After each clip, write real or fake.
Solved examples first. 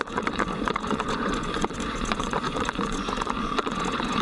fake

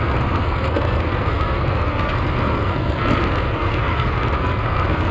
fake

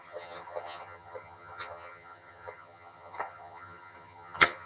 fake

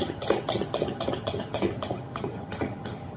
fake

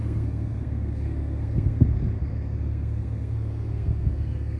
fake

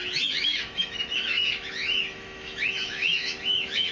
fake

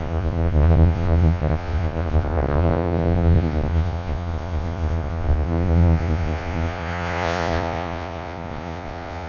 fake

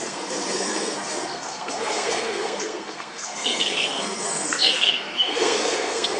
fake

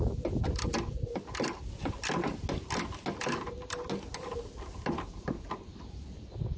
real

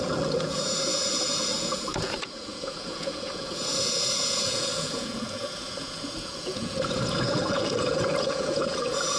fake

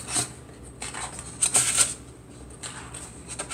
real